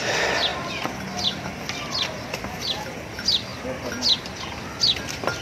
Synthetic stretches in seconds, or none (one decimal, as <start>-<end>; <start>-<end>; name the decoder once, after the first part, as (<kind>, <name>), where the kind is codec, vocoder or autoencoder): none